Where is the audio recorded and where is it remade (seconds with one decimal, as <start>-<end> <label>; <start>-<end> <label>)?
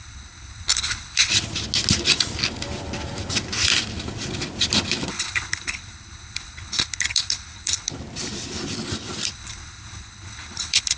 0.0-1.3 remade; 1.3-5.1 recorded; 5.1-7.9 remade; 7.9-9.3 recorded; 9.3-11.0 remade